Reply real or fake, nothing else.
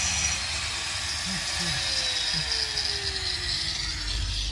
real